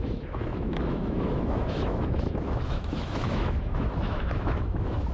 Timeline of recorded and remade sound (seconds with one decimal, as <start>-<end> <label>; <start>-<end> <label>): 0.0-5.1 remade